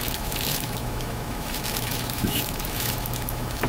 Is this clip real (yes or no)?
no